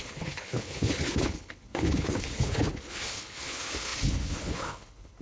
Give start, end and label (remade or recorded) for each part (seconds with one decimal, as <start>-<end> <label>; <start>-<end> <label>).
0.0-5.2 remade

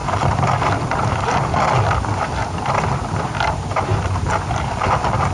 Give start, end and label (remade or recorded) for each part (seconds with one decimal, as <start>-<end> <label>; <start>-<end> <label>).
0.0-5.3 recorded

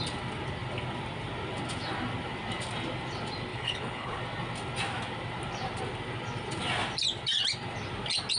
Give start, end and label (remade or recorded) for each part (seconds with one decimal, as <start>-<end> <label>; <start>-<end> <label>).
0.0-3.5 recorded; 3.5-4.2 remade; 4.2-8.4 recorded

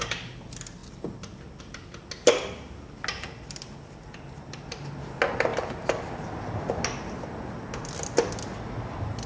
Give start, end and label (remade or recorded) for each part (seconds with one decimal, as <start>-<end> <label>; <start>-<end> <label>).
0.0-9.3 recorded

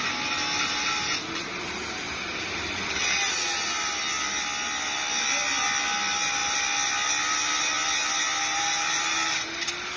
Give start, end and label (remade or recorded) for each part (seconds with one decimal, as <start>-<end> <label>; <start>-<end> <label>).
0.0-10.0 recorded